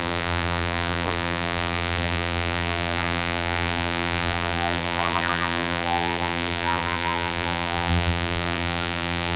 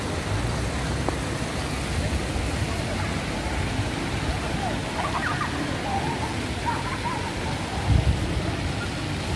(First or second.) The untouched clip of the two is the second